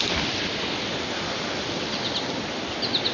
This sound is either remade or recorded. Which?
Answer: recorded